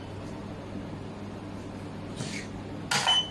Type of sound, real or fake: real